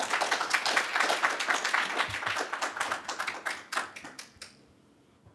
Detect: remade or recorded recorded